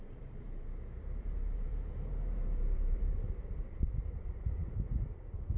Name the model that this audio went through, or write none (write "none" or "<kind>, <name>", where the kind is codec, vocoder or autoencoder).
vocoder, BigVGAN v2